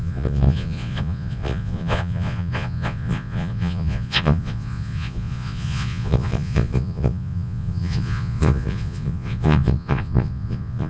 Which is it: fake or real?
fake